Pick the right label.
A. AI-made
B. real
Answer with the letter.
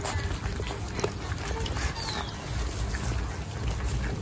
B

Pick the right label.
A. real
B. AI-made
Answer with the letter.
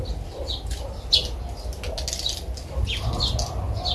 A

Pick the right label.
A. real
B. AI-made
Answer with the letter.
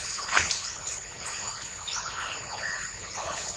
B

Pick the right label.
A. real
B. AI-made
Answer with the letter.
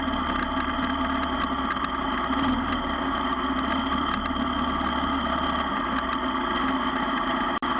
A